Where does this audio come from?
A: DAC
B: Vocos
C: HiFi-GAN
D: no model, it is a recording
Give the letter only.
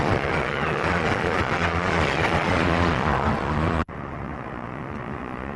B